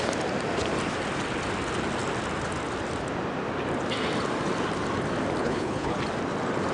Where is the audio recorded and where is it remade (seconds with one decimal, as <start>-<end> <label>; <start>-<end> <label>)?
0.0-5.4 recorded; 5.4-6.0 remade; 6.0-6.7 recorded